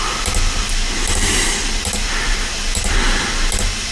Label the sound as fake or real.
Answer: real